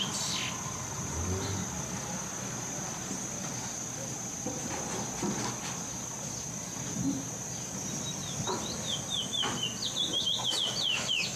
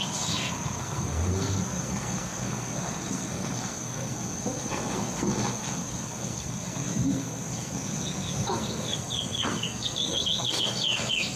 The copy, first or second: second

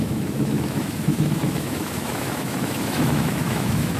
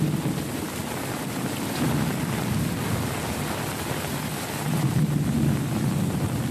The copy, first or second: first